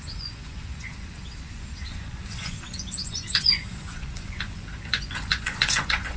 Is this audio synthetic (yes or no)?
yes